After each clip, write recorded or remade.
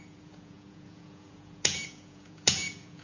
remade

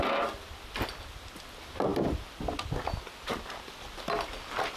recorded